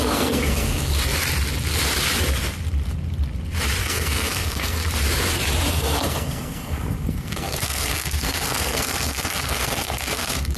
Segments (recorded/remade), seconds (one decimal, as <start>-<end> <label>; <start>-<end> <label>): 0.0-0.9 remade; 0.9-3.8 recorded; 3.8-4.8 remade; 4.8-5.7 recorded; 5.7-10.6 remade